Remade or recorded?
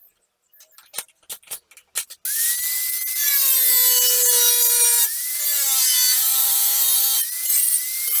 recorded